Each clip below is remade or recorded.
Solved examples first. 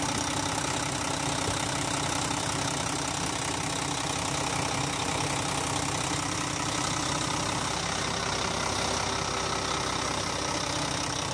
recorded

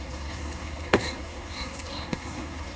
remade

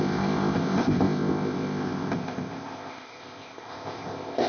remade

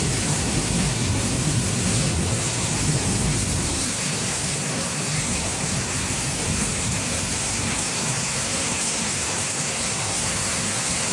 remade